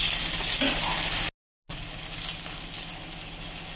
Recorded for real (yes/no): yes